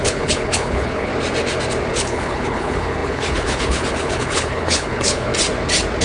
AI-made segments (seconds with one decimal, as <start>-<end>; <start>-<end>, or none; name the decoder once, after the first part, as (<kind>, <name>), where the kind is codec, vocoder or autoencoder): 0.0-1.1 (codec, HILCodec); 1.9-5.3